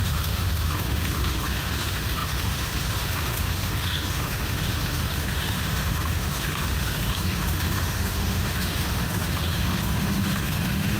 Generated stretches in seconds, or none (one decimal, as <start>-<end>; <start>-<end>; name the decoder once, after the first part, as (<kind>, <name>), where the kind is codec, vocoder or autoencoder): 0.0-11.0 (autoencoder, DAC-VAE)